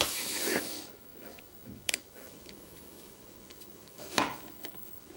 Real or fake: fake